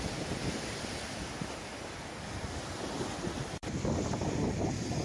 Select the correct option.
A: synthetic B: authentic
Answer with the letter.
B